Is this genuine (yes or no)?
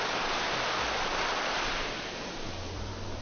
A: yes